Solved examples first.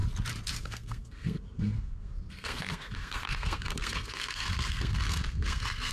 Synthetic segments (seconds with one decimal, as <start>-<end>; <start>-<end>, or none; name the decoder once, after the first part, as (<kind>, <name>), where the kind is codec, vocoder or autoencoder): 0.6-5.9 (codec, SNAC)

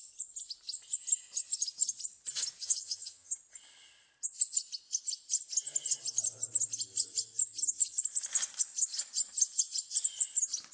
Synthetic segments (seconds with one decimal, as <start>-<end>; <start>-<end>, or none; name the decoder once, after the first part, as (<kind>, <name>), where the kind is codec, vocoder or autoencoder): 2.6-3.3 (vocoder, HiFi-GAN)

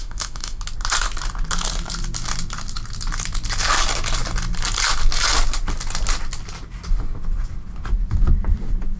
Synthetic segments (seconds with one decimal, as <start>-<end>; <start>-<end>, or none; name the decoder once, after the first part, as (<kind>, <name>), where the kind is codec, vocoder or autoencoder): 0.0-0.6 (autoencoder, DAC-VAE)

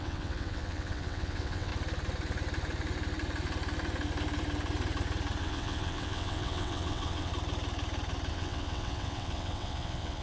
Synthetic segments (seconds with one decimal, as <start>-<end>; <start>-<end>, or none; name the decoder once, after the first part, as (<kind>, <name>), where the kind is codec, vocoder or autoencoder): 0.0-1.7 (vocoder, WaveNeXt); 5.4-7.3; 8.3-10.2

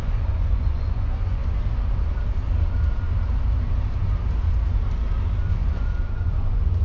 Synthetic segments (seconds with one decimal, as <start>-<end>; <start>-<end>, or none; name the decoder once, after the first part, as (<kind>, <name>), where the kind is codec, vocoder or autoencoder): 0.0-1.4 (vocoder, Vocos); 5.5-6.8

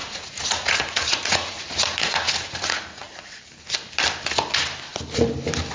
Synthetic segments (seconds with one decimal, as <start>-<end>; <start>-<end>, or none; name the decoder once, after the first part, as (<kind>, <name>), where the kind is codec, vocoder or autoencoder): 0.0-3.4 (vocoder, Vocos)

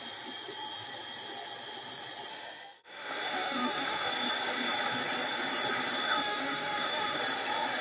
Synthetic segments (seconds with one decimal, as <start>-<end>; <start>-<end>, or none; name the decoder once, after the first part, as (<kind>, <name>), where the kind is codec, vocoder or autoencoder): 2.3-4.1 (autoencoder, DAC-VAE); 6.0-7.2

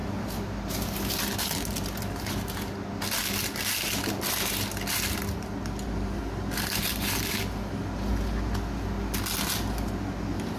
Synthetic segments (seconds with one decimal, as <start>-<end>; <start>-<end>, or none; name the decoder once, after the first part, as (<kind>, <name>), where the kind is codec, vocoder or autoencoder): 6.8-7.4 (vocoder, BigVGAN v2)